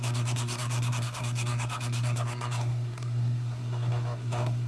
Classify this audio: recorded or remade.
remade